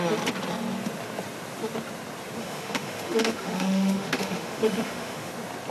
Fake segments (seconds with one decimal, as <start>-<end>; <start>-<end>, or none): 2.4-5.3